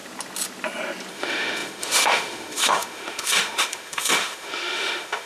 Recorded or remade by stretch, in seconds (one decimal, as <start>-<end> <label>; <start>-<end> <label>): 0.0-1.1 recorded; 1.1-5.3 remade